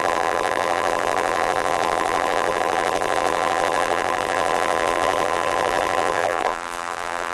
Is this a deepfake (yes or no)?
yes